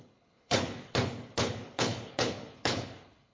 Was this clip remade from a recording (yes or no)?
yes